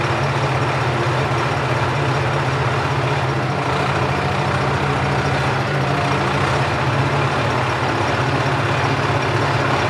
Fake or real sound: real